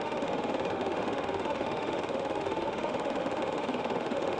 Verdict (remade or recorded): remade